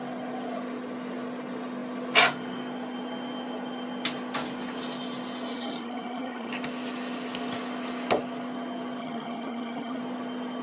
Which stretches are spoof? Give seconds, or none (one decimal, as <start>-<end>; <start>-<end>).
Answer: 5.5-6.5; 9.0-10.0